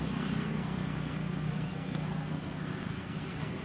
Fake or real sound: fake